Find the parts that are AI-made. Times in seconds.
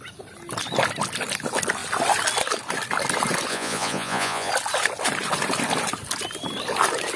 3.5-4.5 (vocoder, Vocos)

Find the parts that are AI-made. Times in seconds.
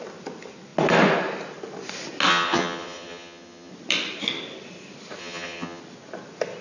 2.3-3.7 (vocoder, HiFi-GAN); 5.2-5.8